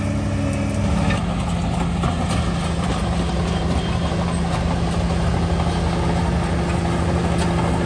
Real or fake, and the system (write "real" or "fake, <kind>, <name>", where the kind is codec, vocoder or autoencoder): real